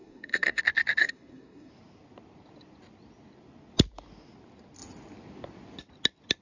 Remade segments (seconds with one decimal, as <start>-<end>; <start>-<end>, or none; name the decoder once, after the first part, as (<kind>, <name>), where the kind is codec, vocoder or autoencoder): 0.0-0.6 (codec, SNAC); 1.0-1.7